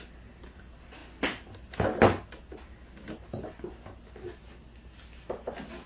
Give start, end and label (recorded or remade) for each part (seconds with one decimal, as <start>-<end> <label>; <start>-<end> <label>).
0.0-5.9 recorded